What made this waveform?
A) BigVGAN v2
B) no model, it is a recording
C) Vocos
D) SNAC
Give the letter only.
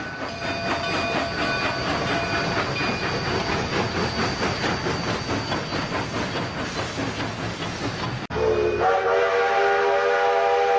B